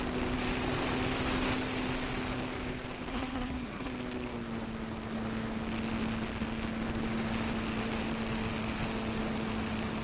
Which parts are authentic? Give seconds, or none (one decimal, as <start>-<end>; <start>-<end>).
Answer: 0.0-3.1; 3.9-10.0